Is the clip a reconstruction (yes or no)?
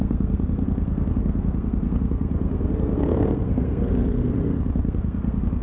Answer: yes